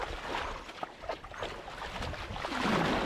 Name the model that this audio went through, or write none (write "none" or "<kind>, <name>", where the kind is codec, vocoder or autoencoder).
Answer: none